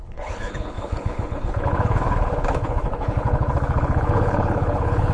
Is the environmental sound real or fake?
fake